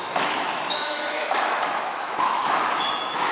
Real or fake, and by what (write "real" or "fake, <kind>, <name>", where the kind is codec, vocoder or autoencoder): fake, autoencoder, DAC-VAE